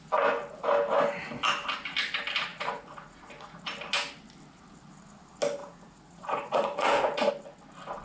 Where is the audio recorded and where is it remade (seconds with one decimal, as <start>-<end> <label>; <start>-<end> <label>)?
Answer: 0.0-2.5 recorded; 2.5-3.6 remade; 3.6-5.6 recorded; 5.6-7.3 remade; 7.3-8.0 recorded